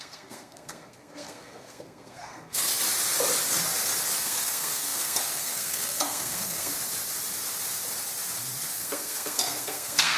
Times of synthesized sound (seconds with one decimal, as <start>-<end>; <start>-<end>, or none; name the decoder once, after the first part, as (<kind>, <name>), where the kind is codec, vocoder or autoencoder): 0.0-2.7 (codec, SNAC); 4.2-6.7; 8.7-10.2